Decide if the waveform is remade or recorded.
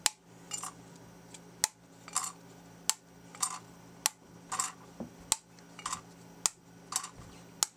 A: recorded